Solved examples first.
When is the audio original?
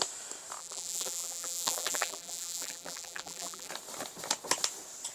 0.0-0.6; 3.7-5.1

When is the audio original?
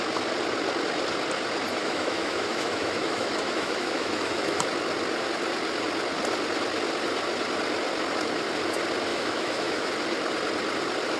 0.0-1.8; 4.6-9.1; 9.9-11.2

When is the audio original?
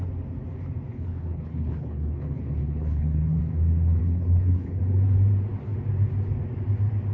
0.0-0.9; 3.4-4.0; 4.8-7.1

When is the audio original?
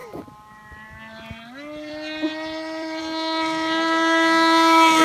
0.0-3.0